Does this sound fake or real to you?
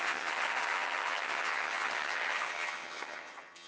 fake